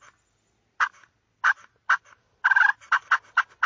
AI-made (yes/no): no